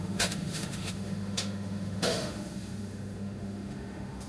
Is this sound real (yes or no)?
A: no